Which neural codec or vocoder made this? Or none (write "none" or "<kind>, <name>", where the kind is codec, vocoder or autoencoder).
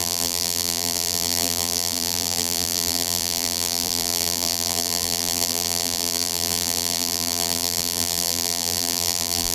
vocoder, BigVGAN v2